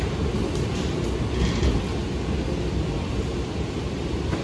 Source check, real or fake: real